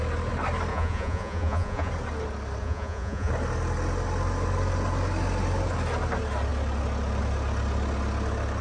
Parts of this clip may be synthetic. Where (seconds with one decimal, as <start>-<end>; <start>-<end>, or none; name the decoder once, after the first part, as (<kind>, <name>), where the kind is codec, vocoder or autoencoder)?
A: 0.7-1.9 (vocoder, Vocos); 2.6-3.3

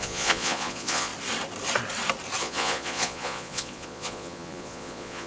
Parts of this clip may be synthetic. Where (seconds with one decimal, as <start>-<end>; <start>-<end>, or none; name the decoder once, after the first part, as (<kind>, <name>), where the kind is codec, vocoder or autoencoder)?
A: 0.0-1.1 (vocoder, Vocos); 2.4-5.3

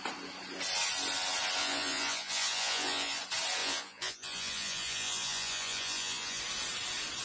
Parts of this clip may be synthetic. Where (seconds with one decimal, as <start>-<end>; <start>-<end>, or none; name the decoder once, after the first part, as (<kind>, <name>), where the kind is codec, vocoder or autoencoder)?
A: 1.6-3.2 (vocoder, Vocos); 3.6-6.4

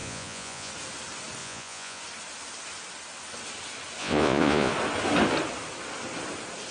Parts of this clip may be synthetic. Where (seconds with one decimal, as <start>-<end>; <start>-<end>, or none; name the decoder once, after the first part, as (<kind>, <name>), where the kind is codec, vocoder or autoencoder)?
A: 0.0-0.7 (vocoder, Vocos); 1.4-2.0; 4.0-4.7

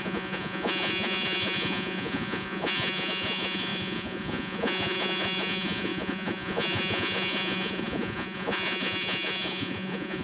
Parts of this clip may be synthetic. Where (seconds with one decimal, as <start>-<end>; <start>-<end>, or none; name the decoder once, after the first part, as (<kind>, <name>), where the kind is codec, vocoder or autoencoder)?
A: 0.0-10.2 (vocoder, Vocos)

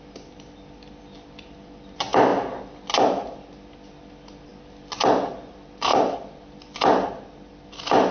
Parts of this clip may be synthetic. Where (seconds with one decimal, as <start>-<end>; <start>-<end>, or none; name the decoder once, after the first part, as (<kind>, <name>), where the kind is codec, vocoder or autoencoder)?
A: none